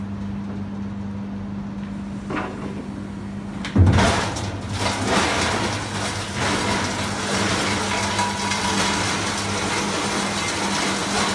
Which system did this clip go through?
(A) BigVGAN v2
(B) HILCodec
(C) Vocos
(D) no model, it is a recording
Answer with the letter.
D